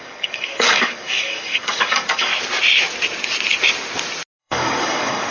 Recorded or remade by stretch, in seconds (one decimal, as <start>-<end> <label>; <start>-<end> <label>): 0.0-2.3 remade; 2.3-4.4 recorded; 4.4-5.3 remade